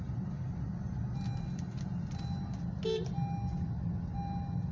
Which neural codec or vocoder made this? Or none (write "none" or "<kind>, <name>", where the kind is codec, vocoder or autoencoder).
none